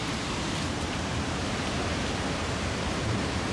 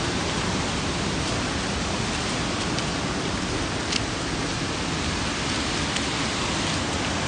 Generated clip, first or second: first